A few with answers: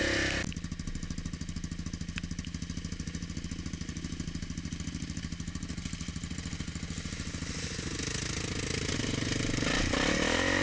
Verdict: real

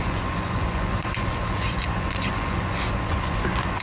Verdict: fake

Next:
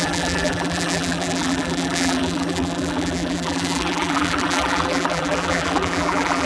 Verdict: fake